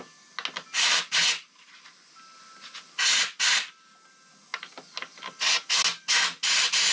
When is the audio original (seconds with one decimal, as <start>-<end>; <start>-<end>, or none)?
0.0-6.9